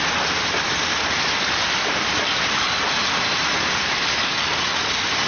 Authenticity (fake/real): real